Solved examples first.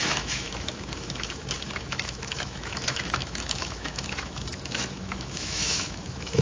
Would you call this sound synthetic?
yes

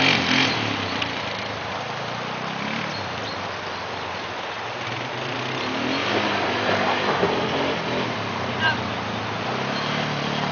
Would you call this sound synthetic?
no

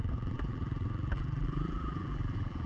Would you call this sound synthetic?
yes